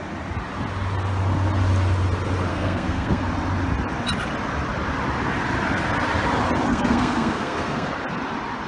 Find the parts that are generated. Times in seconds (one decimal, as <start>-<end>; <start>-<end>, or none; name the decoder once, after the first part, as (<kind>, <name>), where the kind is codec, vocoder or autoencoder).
2.5-3.2 (codec, SNAC); 6.7-7.9